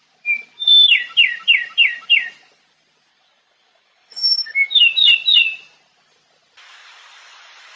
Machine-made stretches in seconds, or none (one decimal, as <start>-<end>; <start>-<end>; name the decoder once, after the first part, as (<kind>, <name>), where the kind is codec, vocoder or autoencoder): 3.1-4.9 (codec, DAC)